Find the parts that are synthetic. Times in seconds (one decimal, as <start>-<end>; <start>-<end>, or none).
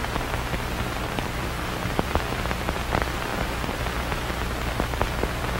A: 1.1-3.3; 4.7-5.6